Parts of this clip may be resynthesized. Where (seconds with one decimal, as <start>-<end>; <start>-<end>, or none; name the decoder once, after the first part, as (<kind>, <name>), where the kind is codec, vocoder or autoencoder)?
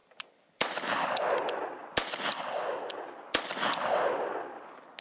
none